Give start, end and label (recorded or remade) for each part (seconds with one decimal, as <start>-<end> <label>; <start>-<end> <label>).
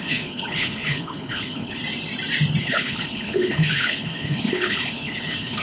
0.0-1.8 remade; 1.8-2.6 recorded; 2.6-5.6 remade